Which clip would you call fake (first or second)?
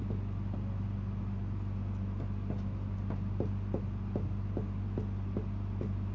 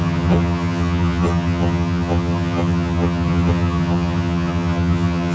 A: second